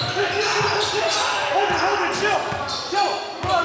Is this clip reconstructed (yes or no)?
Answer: no